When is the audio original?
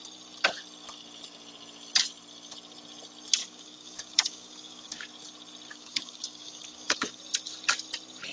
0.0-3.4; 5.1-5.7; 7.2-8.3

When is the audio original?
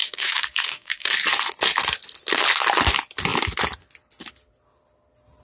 1.1-5.4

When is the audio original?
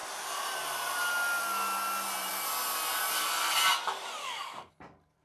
0.0-4.2; 4.7-5.2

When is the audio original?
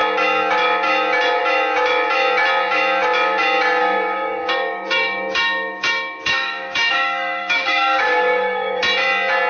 0.0-3.8; 8.8-9.5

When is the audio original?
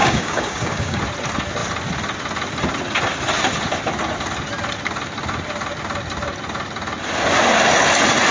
1.0-8.3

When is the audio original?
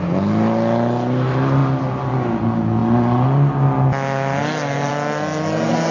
0.0-5.9